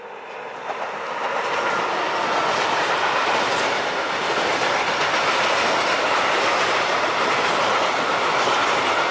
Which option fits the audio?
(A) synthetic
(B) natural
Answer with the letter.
B